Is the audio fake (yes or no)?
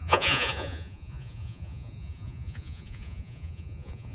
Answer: yes